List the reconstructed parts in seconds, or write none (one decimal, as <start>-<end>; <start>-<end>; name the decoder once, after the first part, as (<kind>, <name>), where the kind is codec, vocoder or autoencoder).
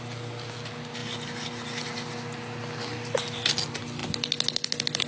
none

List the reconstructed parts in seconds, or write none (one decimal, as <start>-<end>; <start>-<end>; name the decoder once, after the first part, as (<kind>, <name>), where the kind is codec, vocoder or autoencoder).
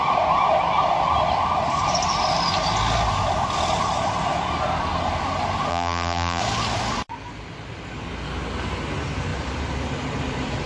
5.7-6.4 (vocoder, BigVGAN v2)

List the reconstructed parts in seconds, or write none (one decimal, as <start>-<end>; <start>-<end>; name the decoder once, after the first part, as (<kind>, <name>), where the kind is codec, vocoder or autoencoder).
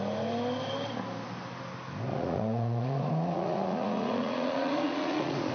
2.1-5.5 (vocoder, Vocos)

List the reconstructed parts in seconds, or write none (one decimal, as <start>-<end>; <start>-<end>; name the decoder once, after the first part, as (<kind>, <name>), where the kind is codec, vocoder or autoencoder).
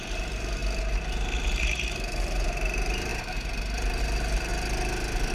0.0-0.6 (vocoder, BigVGAN v2); 1.6-4.5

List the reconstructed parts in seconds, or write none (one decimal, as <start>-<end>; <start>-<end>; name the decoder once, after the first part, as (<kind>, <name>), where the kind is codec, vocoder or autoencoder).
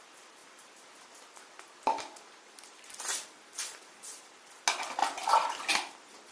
none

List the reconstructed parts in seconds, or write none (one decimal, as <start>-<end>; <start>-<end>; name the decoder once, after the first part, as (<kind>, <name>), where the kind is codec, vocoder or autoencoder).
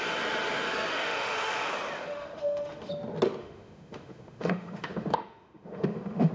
0.9-1.7 (autoencoder, DAC-VAE); 2.1-2.9; 3.4-6.3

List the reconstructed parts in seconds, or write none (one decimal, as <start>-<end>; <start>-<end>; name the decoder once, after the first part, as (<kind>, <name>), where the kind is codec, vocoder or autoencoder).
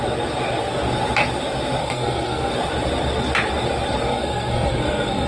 1.8-2.5 (codec, SNAC); 4.1-5.3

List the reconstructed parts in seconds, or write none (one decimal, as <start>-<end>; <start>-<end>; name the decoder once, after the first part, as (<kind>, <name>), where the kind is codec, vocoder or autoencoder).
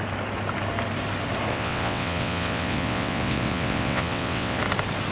1.5-4.6 (vocoder, WaveNeXt)